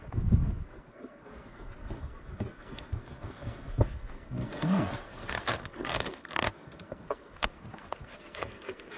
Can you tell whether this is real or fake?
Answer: fake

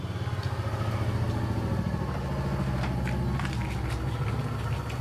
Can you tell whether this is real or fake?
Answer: real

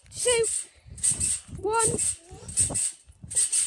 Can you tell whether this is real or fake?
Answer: real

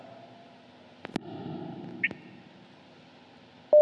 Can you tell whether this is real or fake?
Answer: real